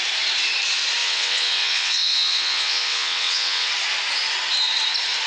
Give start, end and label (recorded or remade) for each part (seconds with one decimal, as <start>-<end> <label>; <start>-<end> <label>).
0.0-1.0 recorded; 1.0-3.7 remade; 3.7-5.3 recorded